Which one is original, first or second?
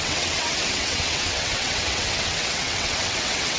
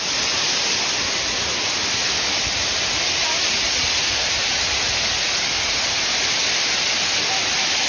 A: second